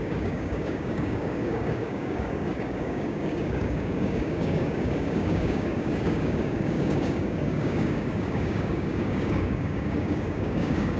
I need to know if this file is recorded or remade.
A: remade